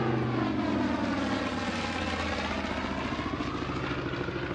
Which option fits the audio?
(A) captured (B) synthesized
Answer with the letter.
A